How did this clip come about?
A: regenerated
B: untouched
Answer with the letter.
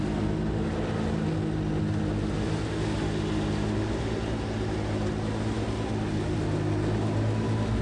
B